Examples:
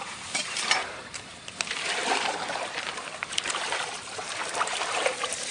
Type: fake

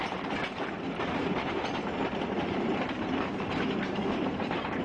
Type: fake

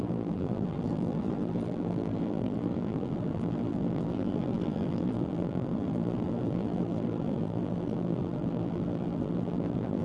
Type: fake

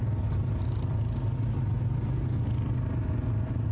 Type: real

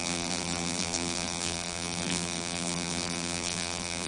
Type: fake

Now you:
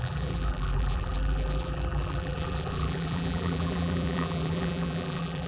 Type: fake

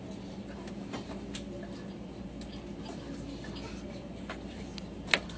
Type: real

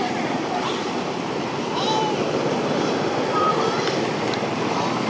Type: fake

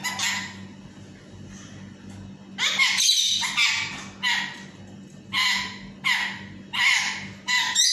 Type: real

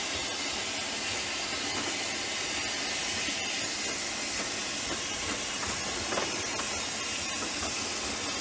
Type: real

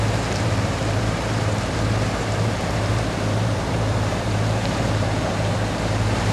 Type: fake